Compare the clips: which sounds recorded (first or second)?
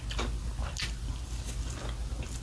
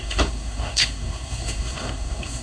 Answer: first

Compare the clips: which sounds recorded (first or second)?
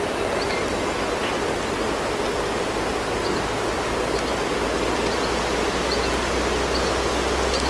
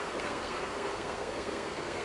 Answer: first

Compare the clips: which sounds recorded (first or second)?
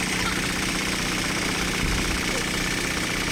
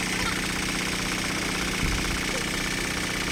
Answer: second